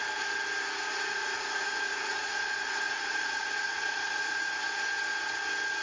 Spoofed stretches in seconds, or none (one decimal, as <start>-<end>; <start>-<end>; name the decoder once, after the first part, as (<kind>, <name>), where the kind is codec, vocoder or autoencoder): 0.9-4.4 (vocoder, Vocos)